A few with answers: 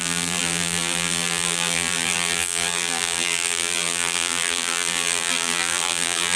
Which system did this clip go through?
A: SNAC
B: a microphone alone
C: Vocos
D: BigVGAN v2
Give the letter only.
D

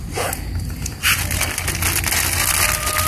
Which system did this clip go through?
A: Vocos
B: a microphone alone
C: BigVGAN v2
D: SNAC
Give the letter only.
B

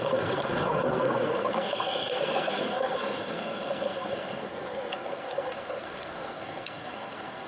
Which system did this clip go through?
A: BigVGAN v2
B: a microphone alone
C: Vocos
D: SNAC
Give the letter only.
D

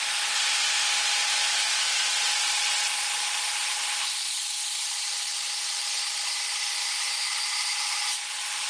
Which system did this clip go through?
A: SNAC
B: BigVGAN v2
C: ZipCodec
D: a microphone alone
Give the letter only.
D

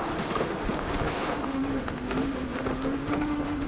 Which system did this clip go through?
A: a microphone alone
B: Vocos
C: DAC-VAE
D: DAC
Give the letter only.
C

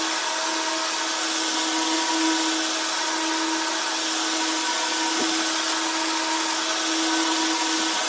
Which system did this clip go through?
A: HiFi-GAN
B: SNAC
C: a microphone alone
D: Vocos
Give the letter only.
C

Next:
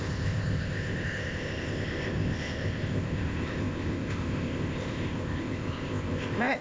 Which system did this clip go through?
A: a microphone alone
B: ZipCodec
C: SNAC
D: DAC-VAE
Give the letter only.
B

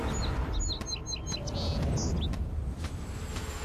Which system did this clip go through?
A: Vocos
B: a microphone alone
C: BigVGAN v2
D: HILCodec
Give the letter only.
B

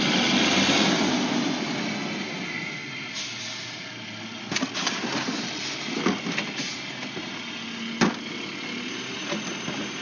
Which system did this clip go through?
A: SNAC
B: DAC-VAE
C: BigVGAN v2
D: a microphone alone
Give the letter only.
D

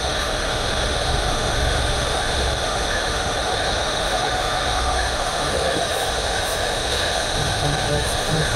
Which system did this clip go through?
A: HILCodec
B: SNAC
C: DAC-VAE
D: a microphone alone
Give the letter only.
C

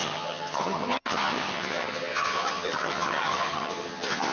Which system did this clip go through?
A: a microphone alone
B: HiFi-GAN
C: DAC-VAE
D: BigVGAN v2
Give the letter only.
B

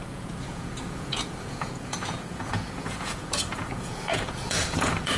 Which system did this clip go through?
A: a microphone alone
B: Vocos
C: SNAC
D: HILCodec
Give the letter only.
B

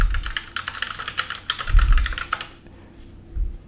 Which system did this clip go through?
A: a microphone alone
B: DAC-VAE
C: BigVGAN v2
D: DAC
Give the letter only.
A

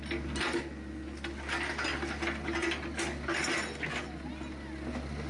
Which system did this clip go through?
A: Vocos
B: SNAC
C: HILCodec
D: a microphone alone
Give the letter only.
D